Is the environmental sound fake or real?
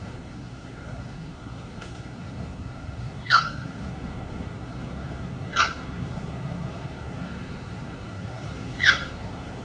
fake